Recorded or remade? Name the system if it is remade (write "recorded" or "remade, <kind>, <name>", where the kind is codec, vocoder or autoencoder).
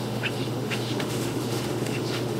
remade, autoencoder, DAC-VAE